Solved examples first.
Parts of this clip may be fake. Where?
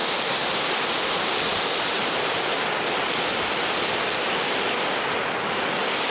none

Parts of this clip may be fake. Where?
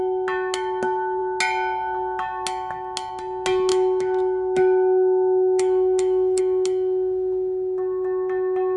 3.7-6.4 (autoencoder, DAC-VAE)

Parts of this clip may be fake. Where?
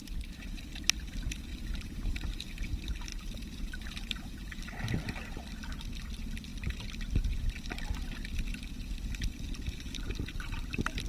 0.0-0.6 (vocoder, BigVGAN v2); 1.5-2.7; 3.1-4.5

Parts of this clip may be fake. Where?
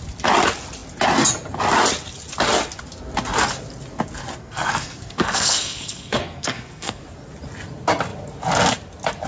4.4-7.0 (codec, SNAC)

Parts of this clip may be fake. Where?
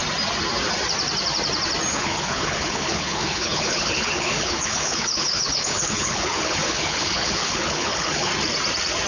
1.9-8.3 (codec, HILCodec)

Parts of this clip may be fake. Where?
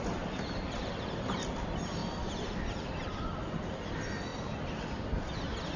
none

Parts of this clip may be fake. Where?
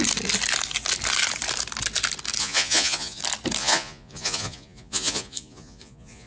2.4-3.2 (vocoder, Vocos); 3.6-6.3